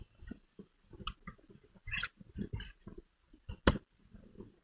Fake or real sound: real